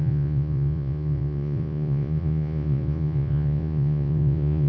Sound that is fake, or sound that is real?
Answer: fake